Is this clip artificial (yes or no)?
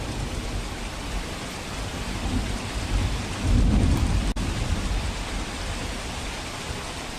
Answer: yes